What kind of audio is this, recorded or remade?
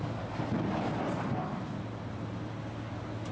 recorded